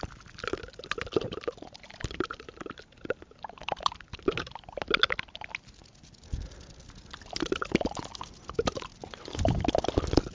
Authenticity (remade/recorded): recorded